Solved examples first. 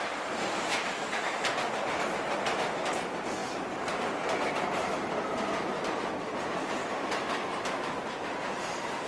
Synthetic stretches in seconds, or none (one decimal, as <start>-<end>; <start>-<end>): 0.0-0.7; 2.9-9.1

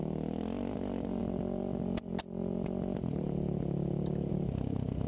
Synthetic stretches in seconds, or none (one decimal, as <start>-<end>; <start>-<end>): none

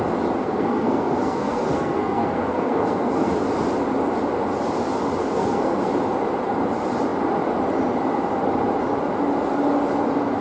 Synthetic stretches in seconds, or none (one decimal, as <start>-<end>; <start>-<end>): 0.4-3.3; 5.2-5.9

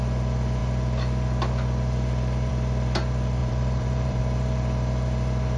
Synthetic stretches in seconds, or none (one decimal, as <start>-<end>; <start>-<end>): 3.4-4.2

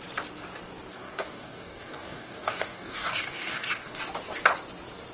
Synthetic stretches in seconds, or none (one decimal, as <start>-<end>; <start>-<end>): 0.9-4.0

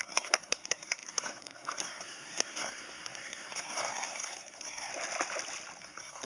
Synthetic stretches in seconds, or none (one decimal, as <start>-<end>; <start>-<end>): 0.0-4.9; 5.8-6.2

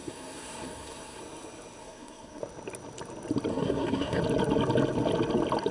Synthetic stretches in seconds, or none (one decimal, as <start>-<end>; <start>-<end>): 0.0-1.2; 1.8-2.4; 3.5-4.2